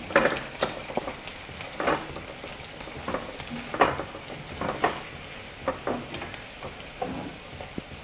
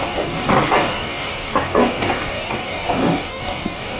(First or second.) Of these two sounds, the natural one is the first